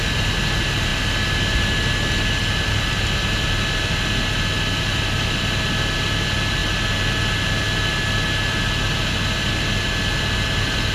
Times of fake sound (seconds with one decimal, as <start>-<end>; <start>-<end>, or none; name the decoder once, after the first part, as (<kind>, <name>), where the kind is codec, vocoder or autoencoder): none